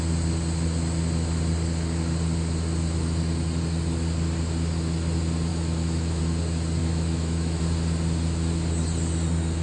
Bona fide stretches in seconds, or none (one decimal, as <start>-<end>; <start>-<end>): 0.0-5.5; 6.2-6.8; 7.6-9.6